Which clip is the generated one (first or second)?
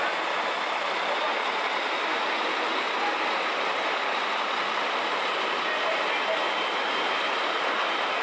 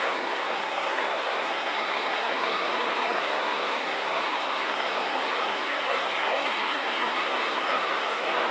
second